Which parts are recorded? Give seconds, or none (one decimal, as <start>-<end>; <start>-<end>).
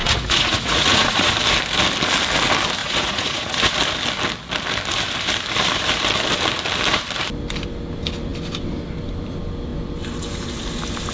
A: 1.3-2.8; 3.7-11.1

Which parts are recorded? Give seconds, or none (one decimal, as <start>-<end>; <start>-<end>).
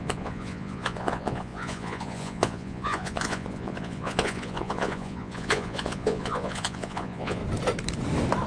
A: 7.4-8.5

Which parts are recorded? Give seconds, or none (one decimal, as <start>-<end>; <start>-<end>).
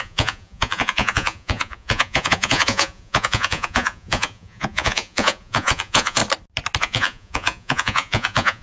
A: 6.2-6.8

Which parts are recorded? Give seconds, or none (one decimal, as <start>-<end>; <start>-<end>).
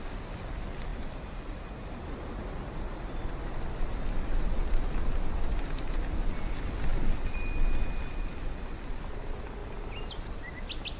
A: 0.0-11.0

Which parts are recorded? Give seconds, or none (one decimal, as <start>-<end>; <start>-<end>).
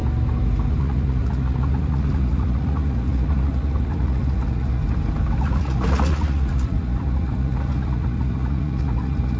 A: 0.0-0.8; 4.8-5.4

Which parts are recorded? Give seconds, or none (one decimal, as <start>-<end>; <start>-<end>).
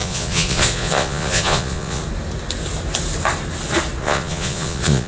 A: 2.0-4.0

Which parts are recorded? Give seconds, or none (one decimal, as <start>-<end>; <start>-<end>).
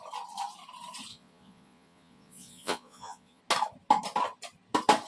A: 0.0-1.1; 3.4-5.1